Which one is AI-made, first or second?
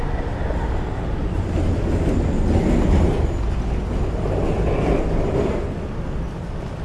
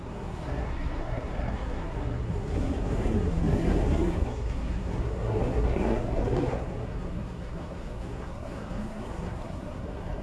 second